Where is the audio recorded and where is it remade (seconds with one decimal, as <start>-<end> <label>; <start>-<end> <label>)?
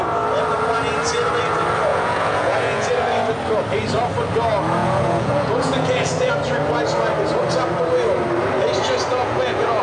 0.0-1.9 recorded; 1.9-2.9 remade; 2.9-4.8 recorded; 4.8-6.3 remade; 6.3-9.1 recorded; 9.1-9.8 remade